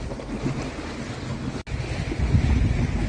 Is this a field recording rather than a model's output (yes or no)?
yes